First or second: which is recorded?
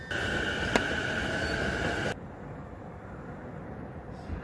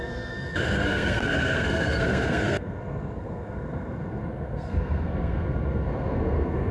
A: first